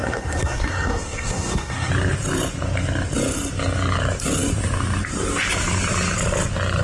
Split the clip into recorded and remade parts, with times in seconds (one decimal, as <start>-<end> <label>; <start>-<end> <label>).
0.0-1.9 remade; 1.9-6.8 recorded